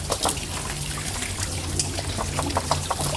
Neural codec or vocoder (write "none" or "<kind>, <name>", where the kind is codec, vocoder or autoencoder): none